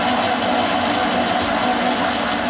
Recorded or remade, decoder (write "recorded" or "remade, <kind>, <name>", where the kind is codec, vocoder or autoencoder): recorded